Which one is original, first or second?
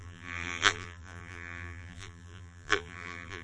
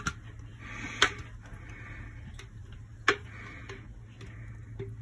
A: second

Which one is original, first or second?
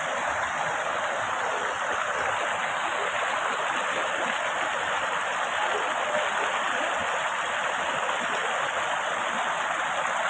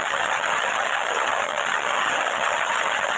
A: first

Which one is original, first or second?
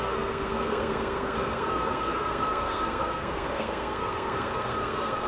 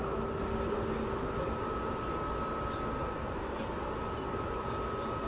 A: second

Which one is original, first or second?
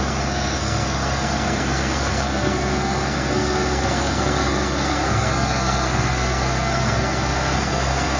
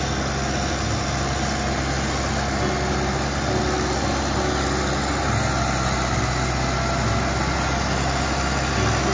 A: second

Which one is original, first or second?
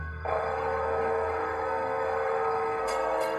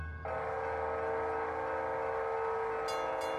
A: second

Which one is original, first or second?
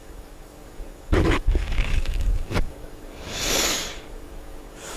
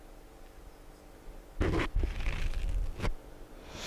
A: second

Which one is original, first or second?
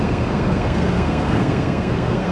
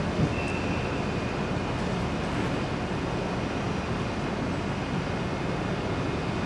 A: second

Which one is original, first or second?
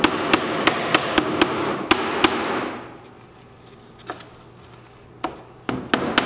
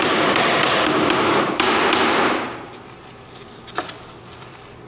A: first